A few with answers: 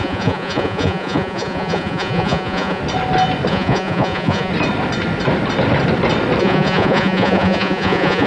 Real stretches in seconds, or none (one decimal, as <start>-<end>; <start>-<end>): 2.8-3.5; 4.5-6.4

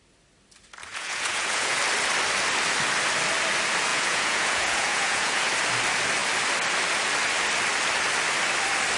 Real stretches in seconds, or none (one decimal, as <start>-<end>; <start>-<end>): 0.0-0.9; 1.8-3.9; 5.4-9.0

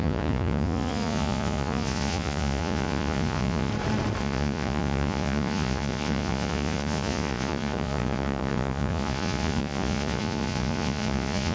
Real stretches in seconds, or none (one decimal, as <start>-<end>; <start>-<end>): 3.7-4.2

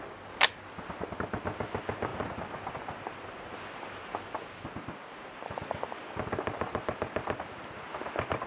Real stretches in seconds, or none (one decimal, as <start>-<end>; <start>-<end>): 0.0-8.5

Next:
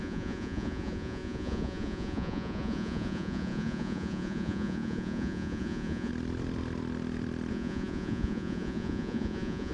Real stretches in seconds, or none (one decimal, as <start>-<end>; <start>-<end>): 6.1-7.5

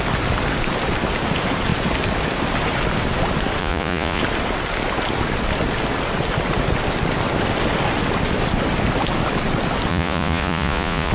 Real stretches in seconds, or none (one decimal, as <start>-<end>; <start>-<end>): 0.0-3.6; 4.2-9.9

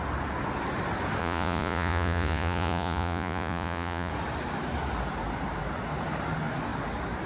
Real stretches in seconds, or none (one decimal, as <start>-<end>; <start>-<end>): 0.0-1.2; 4.1-7.3

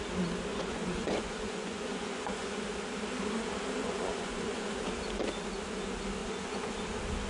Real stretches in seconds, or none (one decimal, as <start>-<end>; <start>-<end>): 0.0-0.5; 2.7-3.8; 4.9-6.2; 6.7-7.3